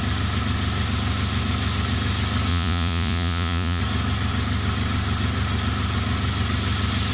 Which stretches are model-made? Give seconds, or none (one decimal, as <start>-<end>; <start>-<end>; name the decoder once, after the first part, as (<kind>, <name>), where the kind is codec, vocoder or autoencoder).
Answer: 2.5-3.8 (vocoder, Vocos)